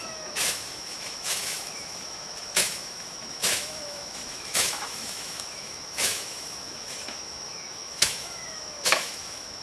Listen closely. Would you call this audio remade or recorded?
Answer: remade